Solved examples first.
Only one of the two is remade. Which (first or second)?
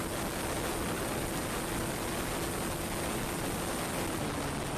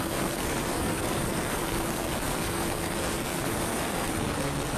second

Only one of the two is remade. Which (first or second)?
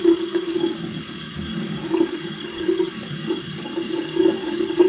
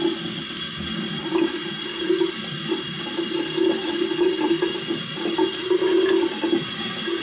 first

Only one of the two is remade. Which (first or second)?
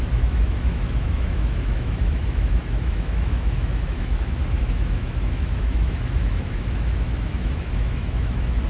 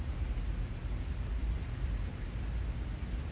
first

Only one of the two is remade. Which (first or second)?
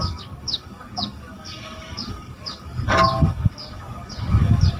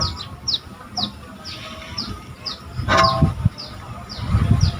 first